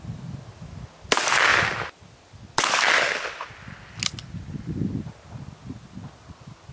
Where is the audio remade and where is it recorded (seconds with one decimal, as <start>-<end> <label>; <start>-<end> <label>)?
0.0-6.7 recorded